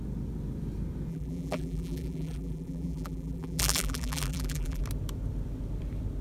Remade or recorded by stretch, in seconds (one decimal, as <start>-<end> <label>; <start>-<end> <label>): 0.0-1.1 recorded; 1.1-4.8 remade; 4.8-6.2 recorded